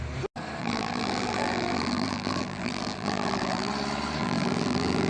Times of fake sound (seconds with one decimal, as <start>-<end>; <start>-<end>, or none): 0.6-3.7; 4.2-5.1